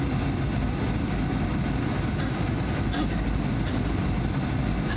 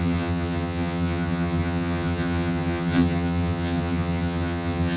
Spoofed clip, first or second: second